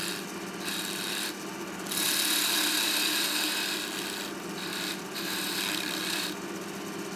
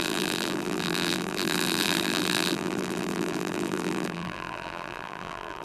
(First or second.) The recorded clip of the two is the first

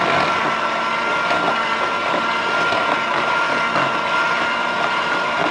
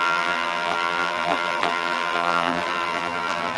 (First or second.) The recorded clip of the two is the first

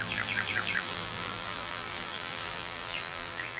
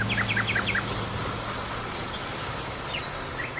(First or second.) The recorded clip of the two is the second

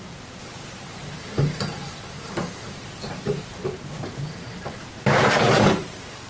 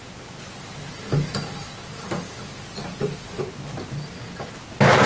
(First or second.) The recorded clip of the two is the second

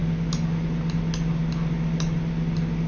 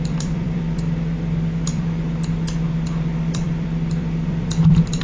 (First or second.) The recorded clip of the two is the first